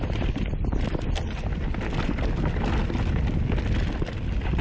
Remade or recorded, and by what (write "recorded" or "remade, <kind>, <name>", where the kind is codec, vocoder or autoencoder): recorded